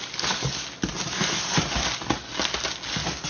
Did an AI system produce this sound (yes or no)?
no